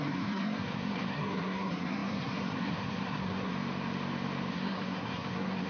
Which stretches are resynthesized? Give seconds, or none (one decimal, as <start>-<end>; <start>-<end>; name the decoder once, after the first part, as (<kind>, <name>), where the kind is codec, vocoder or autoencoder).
0.0-3.5 (codec, SNAC); 4.5-5.7